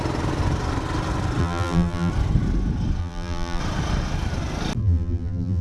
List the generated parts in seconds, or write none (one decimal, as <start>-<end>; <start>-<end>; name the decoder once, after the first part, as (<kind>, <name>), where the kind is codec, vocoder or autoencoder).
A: 1.4-2.1 (vocoder, BigVGAN v2); 3.0-3.6; 4.8-5.6